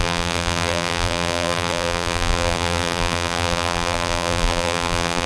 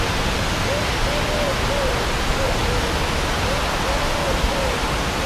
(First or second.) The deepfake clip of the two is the first